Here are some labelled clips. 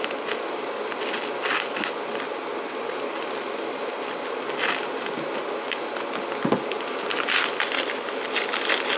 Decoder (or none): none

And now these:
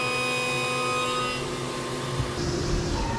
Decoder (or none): none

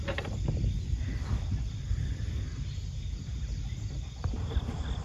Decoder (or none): none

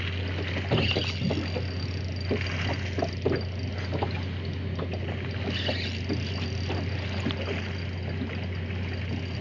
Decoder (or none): none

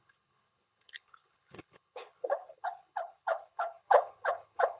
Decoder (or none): codec, HILCodec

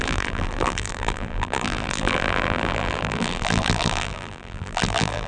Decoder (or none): vocoder, BigVGAN v2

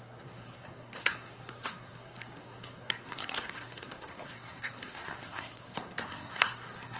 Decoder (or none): codec, SNAC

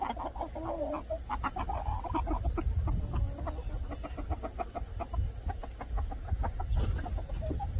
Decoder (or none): none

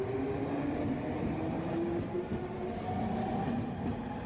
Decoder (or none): none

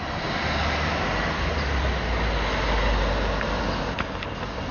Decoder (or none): none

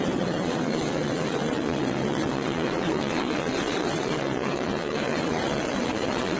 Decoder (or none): vocoder, WaveNeXt